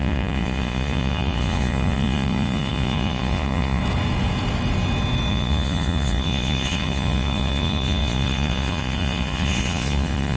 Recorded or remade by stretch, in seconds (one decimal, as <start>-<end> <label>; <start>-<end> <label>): 0.0-3.8 remade; 3.8-5.3 recorded; 5.3-10.4 remade